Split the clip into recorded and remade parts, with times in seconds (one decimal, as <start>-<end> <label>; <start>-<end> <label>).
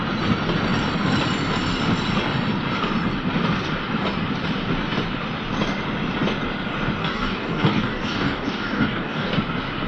0.0-7.0 recorded; 7.0-9.3 remade; 9.3-9.9 recorded